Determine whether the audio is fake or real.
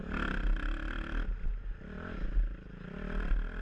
real